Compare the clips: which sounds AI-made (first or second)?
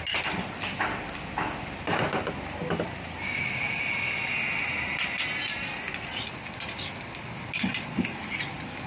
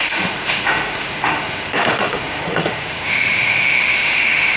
second